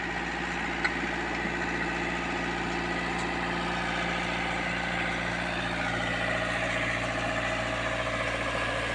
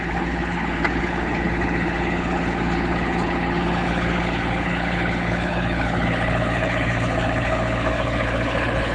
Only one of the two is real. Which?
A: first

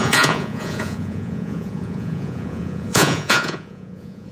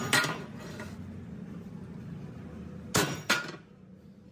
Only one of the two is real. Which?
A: second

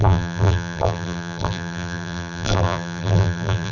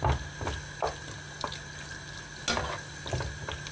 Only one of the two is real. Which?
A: second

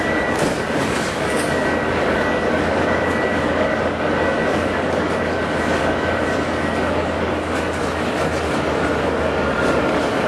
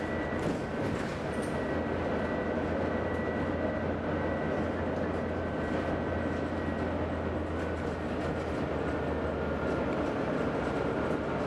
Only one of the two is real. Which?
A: second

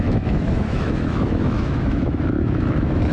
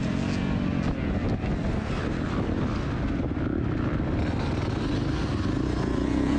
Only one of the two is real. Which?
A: second